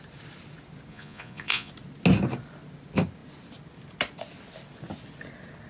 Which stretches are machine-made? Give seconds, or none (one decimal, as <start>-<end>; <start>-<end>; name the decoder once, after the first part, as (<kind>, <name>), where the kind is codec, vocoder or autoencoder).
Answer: 0.9-1.7 (vocoder, Vocos)